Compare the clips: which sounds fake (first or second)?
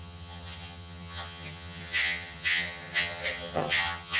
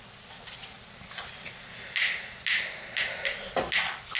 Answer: first